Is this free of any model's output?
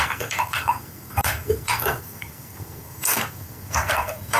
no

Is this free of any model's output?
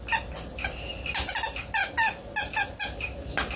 yes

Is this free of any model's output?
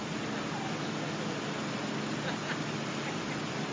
yes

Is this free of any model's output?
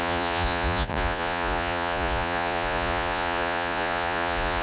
no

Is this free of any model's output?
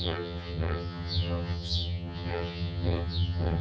no